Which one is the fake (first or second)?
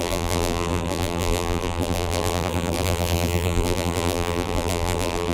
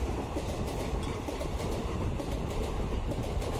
first